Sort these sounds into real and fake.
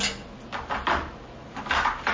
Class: real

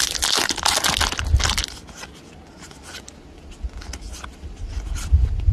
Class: real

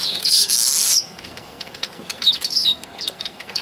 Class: fake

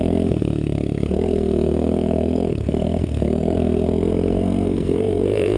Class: fake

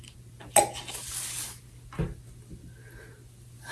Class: real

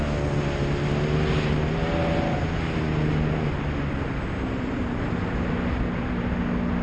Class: real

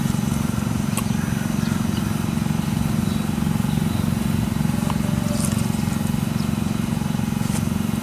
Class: real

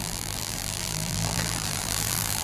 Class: fake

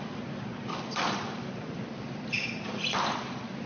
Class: fake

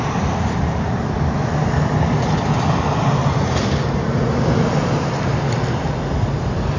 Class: real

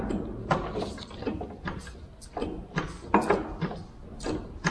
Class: real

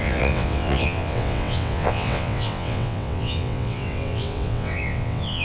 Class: fake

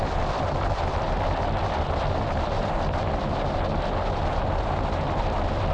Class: real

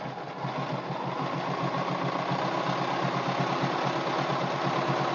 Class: real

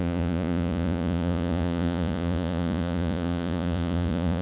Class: fake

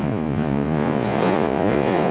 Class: fake